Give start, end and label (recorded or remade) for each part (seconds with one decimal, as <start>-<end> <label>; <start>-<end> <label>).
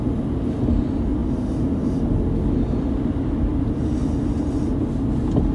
0.0-5.5 recorded